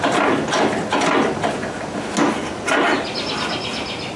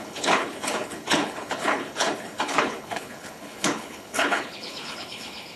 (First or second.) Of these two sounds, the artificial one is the second